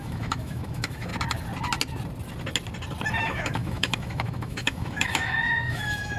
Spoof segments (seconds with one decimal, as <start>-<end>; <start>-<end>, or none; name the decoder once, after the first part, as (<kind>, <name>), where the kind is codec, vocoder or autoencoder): 0.0-1.1 (autoencoder, DAC-VAE); 3.2-6.2